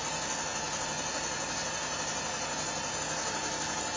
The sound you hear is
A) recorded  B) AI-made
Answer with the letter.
A